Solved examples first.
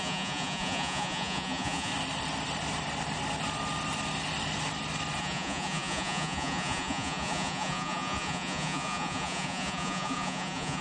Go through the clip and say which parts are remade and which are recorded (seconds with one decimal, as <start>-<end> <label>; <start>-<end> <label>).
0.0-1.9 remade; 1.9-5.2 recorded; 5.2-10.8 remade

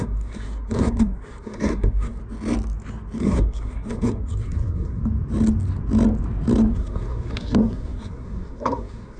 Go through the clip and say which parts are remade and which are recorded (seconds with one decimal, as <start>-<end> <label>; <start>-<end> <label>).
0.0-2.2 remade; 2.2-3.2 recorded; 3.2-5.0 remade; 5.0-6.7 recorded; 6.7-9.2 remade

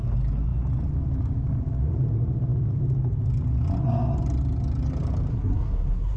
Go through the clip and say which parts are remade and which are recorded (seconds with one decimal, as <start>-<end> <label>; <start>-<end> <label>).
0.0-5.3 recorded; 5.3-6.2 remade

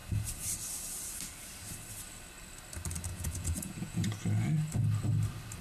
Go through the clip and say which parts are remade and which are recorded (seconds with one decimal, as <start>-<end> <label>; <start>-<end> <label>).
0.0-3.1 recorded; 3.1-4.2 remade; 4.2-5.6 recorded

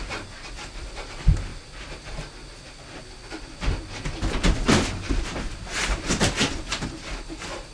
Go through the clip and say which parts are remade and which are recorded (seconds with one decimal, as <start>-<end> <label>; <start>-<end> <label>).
0.0-1.5 remade; 1.5-6.1 recorded; 6.1-7.7 remade

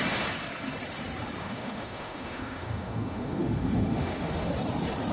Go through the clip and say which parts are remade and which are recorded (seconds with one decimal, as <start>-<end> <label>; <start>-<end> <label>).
0.0-1.4 recorded; 1.4-4.5 remade; 4.5-5.1 recorded